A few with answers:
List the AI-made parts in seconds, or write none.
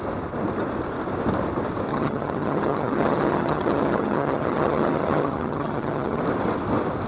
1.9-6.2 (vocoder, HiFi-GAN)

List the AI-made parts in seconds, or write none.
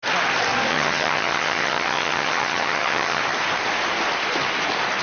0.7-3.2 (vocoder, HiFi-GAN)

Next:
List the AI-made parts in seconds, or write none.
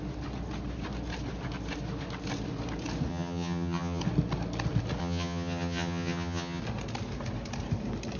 3.1-4.0 (vocoder, HiFi-GAN); 5.0-6.6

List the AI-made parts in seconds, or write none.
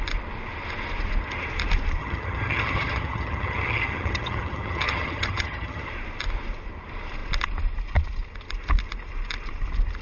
2.0-5.9 (vocoder, HiFi-GAN)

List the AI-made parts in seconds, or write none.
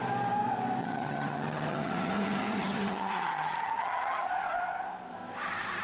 0.8-4.3 (vocoder, HiFi-GAN)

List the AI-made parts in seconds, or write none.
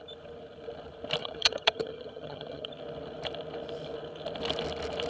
1.2-2.7 (vocoder, HiFi-GAN)